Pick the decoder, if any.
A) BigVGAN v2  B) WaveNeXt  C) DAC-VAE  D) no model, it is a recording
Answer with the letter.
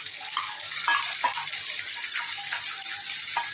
D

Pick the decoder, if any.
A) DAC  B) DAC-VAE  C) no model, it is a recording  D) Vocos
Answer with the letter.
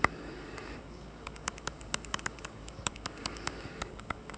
A